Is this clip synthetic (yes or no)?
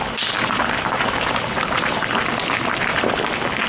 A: yes